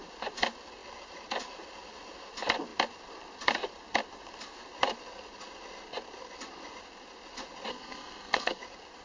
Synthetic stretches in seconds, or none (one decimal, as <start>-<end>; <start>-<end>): 7.7-8.6